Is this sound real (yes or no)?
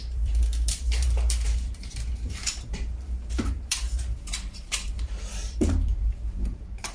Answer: no